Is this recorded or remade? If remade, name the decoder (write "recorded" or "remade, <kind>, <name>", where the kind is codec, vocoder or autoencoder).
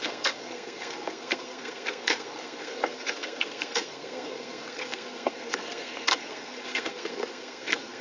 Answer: remade, codec, SNAC